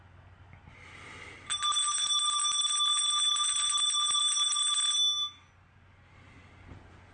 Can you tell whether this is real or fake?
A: real